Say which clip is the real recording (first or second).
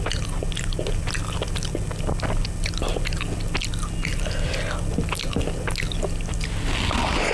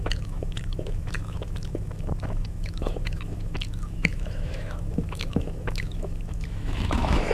first